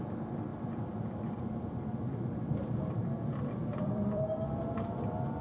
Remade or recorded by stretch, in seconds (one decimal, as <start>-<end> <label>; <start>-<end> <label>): 0.0-1.9 remade; 1.9-2.9 recorded; 2.9-5.4 remade